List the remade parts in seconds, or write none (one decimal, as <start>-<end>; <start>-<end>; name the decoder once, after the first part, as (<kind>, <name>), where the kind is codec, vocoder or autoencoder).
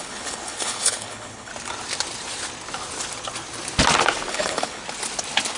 0.0-1.5 (codec, HILCodec); 4.3-4.8